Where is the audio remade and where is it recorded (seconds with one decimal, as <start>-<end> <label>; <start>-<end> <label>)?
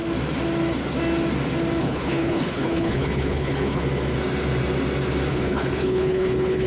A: 0.0-1.8 recorded; 1.8-3.8 remade; 3.8-5.3 recorded; 5.3-6.7 remade